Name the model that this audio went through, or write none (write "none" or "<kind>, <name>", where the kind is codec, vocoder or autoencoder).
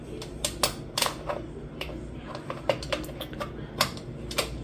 none